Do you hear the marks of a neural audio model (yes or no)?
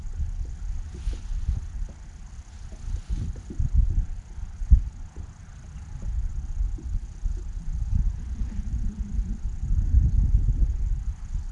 no